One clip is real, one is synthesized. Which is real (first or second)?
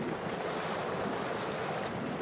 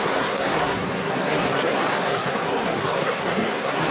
first